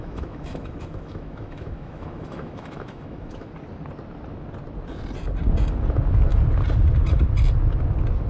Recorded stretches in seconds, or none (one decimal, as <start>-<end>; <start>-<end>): 3.5-8.3

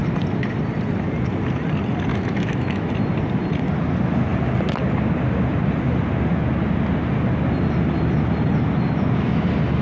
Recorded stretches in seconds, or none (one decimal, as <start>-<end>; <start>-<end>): 0.0-2.1; 2.9-9.8